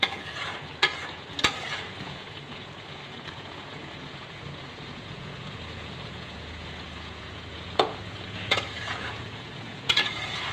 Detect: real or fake fake